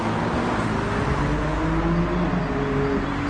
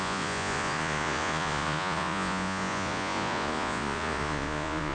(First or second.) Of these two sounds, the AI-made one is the second